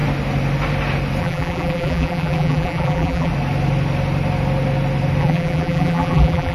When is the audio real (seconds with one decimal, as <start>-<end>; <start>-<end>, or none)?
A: 0.0-1.2; 3.3-5.2